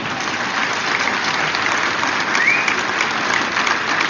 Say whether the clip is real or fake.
real